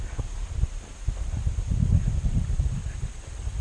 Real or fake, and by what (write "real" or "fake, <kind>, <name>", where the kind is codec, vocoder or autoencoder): real